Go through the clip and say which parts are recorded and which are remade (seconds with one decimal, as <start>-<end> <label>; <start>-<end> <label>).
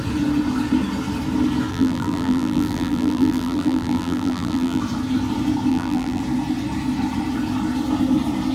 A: 0.0-1.7 recorded; 1.7-4.8 remade; 4.8-5.7 recorded; 5.7-6.2 remade; 6.2-8.5 recorded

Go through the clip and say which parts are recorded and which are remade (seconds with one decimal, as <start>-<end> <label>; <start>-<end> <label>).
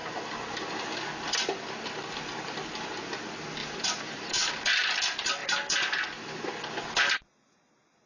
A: 0.0-3.6 recorded; 3.6-4.5 remade; 4.5-8.1 recorded